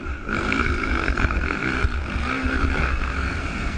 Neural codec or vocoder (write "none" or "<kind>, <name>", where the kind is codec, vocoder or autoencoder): codec, SNAC